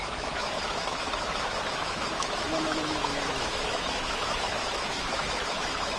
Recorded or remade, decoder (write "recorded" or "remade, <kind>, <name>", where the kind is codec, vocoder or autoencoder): remade, autoencoder, DAC-VAE